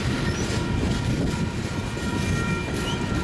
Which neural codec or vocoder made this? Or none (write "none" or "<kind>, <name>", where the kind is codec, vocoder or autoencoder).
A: none